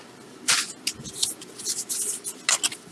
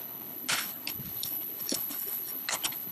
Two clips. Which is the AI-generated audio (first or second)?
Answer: second